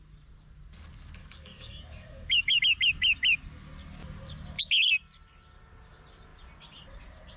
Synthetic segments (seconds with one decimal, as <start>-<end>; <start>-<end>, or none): 1.2-2.6